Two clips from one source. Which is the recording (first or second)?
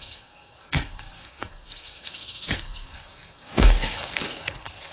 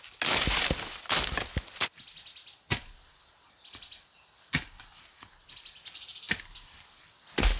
second